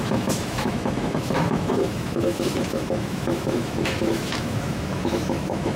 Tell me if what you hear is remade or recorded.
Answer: remade